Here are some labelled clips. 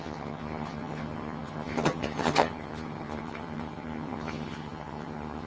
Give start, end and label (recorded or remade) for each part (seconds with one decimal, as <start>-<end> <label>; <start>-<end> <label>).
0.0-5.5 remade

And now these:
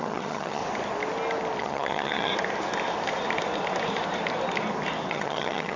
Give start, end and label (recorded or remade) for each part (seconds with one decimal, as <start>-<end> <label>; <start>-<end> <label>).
0.0-0.6 remade; 0.6-1.6 recorded; 1.6-2.3 remade; 2.3-5.1 recorded; 5.1-5.8 remade

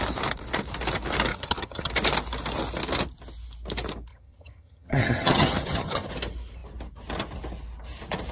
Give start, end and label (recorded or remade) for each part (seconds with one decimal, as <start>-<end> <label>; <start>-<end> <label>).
0.0-1.3 recorded; 1.3-1.9 remade; 1.9-4.1 recorded; 4.1-6.1 remade; 6.1-8.3 recorded

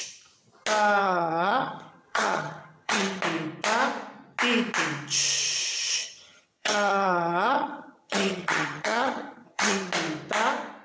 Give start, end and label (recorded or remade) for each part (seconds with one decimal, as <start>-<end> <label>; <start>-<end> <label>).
0.0-1.0 recorded; 1.0-3.2 remade; 3.2-6.0 recorded; 6.0-9.9 remade; 9.9-10.8 recorded

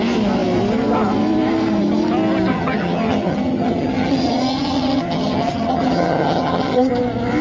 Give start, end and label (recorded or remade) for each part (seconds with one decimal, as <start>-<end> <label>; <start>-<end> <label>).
0.0-2.5 recorded; 2.5-6.9 remade; 6.9-7.4 recorded